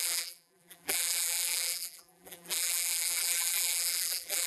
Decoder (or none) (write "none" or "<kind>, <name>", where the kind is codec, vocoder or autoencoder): vocoder, BigVGAN v2